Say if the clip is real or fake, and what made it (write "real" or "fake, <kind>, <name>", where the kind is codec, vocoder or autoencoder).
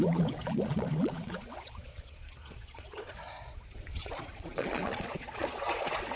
fake, vocoder, Vocos